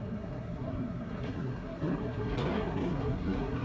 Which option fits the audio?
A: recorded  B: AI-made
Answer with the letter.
B